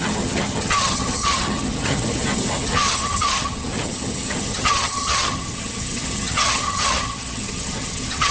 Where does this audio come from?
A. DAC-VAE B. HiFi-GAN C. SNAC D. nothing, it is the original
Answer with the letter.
B